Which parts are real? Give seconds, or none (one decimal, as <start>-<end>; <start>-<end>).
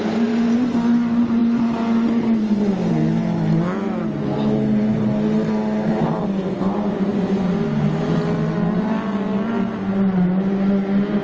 0.0-11.2